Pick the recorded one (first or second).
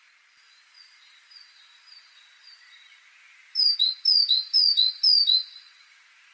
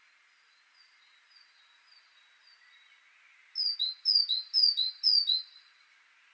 second